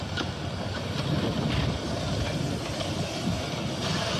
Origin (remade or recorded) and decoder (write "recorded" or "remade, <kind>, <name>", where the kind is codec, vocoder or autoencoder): recorded